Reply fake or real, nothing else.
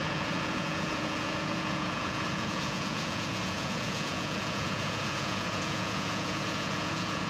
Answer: fake